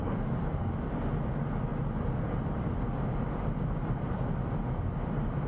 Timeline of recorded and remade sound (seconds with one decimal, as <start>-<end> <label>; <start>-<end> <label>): 0.0-0.7 remade; 0.7-5.5 recorded